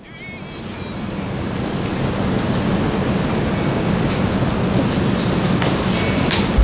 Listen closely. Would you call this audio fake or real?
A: real